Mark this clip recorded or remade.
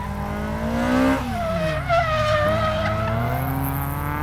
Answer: recorded